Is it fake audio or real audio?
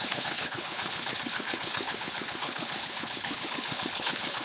fake